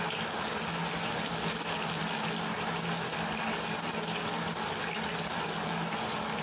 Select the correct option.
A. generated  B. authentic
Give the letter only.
B